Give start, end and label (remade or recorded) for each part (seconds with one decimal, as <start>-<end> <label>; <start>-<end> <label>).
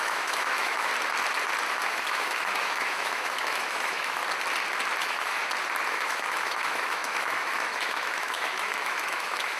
0.0-0.9 remade; 0.9-1.7 recorded; 1.7-4.2 remade; 4.2-5.0 recorded; 5.0-5.4 remade; 5.4-5.9 recorded; 5.9-9.6 remade